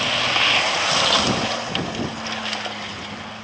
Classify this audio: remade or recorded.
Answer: recorded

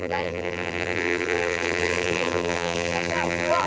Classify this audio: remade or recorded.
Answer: remade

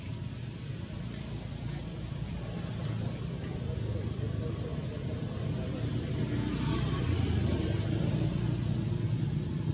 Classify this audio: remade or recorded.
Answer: recorded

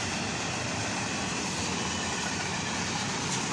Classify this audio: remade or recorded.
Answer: recorded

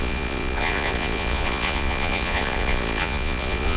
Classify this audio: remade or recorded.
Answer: remade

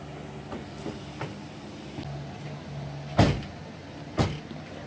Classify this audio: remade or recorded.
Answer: recorded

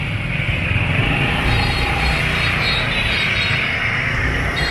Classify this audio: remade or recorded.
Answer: recorded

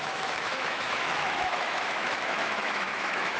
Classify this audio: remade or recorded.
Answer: remade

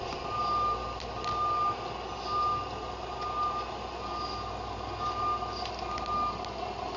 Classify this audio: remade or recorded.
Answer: recorded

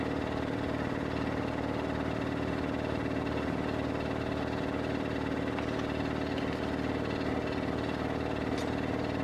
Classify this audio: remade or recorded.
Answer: recorded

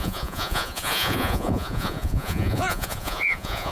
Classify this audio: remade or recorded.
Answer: remade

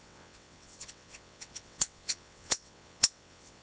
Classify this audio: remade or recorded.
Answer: remade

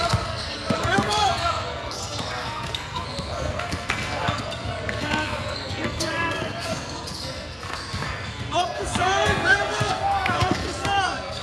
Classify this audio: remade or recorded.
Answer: remade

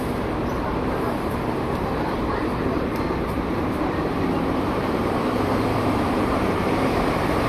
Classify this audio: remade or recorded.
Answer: remade